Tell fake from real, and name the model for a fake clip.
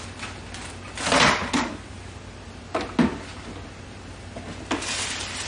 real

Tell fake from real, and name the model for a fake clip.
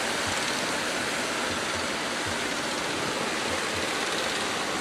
real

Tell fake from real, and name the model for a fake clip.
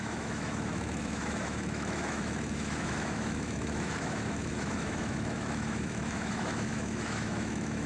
fake, autoencoder, DAC-VAE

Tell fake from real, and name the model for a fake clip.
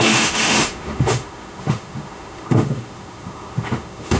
fake, autoencoder, DAC-VAE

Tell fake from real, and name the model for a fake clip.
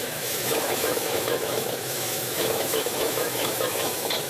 fake, autoencoder, DAC-VAE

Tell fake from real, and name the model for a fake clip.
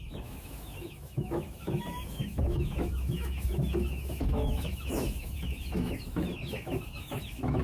fake, autoencoder, DAC-VAE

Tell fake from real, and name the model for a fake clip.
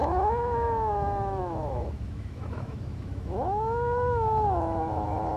fake, autoencoder, DAC-VAE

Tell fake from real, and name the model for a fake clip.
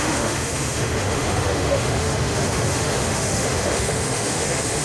fake, autoencoder, DAC-VAE